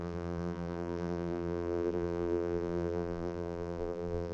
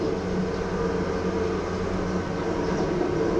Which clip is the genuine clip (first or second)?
second